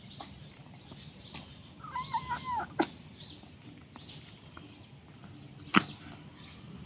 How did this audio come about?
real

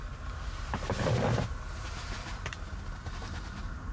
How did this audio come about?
real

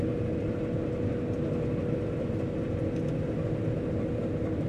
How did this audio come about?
real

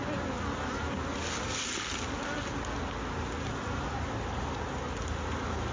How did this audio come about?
real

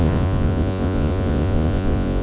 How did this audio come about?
fake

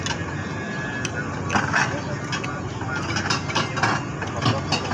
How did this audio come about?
real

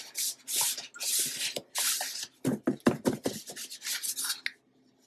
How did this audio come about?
real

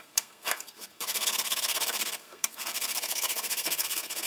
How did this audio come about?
fake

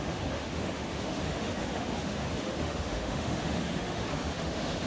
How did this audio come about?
fake